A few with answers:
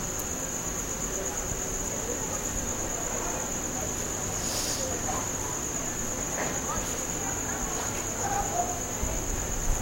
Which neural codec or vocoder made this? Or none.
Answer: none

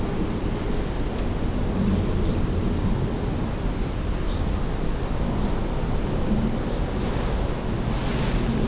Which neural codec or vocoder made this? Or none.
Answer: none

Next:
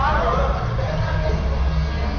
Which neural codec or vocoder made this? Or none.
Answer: none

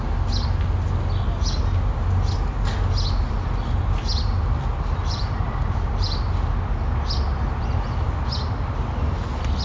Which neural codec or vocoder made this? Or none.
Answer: none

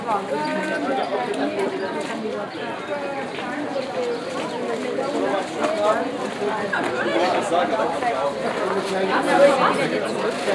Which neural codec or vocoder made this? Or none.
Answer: none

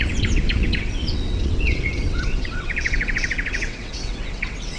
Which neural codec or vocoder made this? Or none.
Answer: vocoder, WaveNeXt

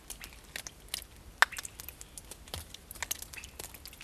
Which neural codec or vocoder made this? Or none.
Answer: none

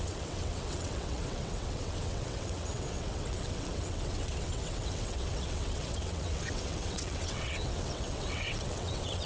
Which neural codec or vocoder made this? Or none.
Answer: vocoder, WaveNeXt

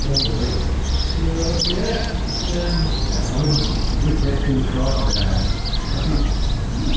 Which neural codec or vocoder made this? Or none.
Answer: none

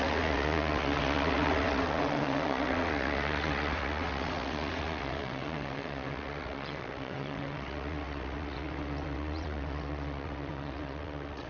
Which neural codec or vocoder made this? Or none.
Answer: vocoder, WaveNeXt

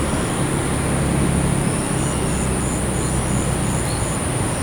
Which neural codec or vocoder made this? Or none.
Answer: none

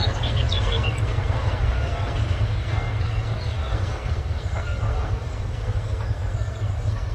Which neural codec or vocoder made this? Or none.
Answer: codec, SNAC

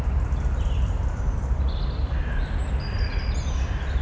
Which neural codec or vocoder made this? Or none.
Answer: none